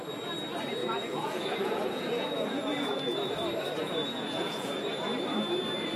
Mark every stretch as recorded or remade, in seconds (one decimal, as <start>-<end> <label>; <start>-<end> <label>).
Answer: 0.0-0.8 recorded; 0.8-3.3 remade; 3.3-3.8 recorded; 3.8-4.8 remade; 4.8-6.0 recorded